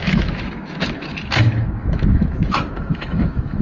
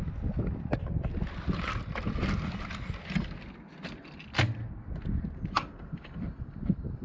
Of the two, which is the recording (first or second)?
second